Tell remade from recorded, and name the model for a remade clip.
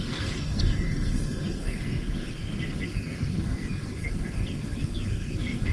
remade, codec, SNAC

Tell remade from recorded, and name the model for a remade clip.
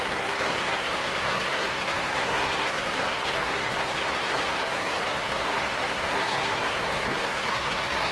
remade, codec, SNAC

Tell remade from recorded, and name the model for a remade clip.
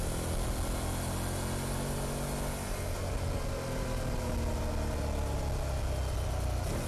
recorded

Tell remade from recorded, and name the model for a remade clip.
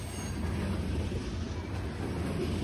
recorded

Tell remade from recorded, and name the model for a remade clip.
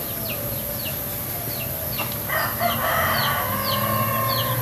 recorded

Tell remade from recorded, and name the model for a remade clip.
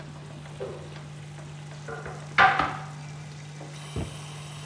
recorded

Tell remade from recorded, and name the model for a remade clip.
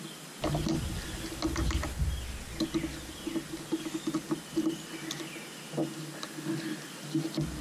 recorded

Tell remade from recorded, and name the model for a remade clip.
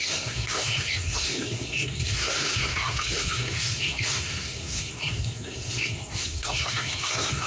remade, codec, SNAC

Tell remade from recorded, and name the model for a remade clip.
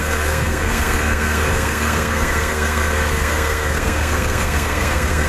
remade, codec, SNAC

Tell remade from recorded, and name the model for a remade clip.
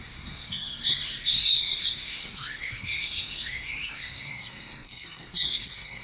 remade, codec, SNAC